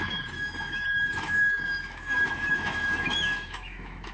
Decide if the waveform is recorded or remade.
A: remade